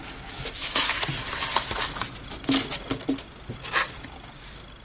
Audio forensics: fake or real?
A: real